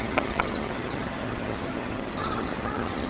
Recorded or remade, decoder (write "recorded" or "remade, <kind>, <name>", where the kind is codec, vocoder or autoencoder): remade, vocoder, HiFi-GAN